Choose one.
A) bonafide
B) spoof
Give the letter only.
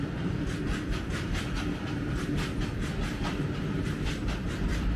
A